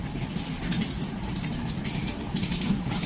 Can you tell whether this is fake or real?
real